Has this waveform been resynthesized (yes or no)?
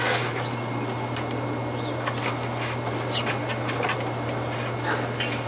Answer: no